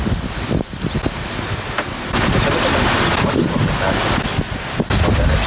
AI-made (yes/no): no